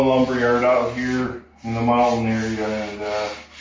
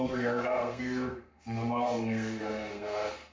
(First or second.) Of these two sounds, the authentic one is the first